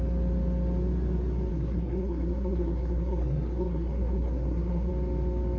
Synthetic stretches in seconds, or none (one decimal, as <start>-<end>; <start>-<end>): 1.5-4.9